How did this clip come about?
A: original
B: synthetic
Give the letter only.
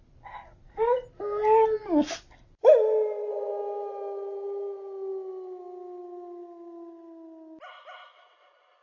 A